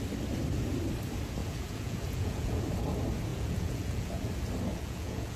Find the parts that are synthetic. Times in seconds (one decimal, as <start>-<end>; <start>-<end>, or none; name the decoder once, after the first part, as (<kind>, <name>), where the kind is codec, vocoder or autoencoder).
1.4-2.6 (vocoder, Vocos); 3.3-4.3; 4.7-5.4